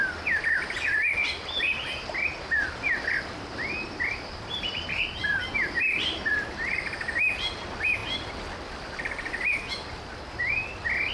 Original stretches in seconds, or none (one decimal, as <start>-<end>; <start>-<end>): 0.0-11.1